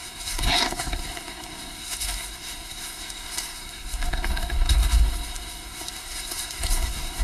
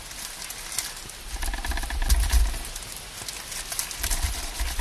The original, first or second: second